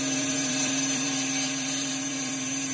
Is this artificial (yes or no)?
yes